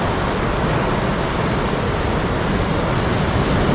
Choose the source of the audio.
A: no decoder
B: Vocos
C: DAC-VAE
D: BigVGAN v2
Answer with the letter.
A